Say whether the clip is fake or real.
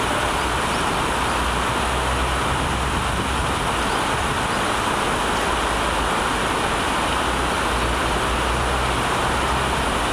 real